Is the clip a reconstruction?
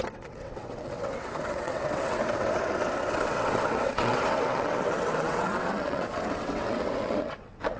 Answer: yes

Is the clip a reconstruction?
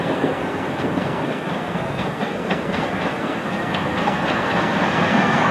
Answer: yes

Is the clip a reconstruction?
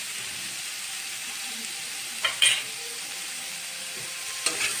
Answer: no